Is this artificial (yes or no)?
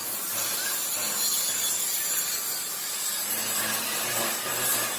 no